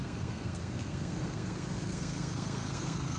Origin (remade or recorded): remade